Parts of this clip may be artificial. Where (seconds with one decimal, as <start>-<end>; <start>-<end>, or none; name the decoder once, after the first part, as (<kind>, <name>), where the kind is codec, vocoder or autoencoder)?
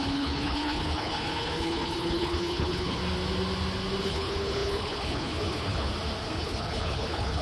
0.0-3.0 (codec, HILCodec); 4.0-5.9; 6.4-7.4